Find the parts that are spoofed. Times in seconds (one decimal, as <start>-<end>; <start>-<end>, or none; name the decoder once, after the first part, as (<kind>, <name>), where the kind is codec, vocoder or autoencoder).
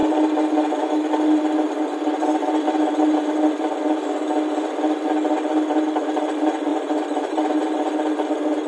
none